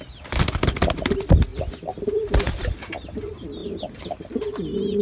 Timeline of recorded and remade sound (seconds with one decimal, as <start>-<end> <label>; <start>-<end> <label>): 0.0-5.0 recorded